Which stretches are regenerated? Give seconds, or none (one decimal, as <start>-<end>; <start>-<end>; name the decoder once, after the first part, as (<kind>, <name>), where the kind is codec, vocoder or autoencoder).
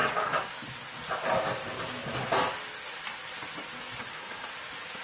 4.0-4.5 (codec, HILCodec)